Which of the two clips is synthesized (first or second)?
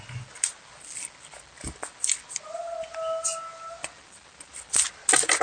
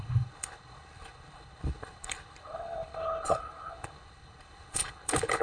second